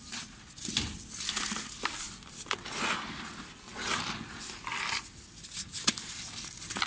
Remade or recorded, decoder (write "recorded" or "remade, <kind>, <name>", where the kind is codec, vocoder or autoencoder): recorded